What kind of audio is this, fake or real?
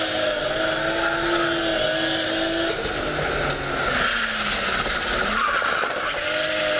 real